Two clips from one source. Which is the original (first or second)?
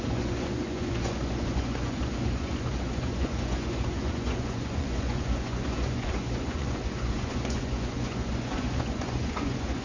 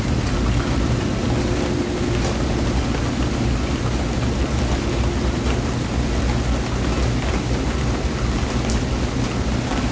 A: second